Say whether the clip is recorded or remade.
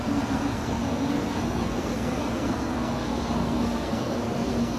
remade